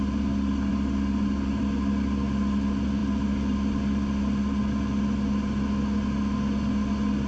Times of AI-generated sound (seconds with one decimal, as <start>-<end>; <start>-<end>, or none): none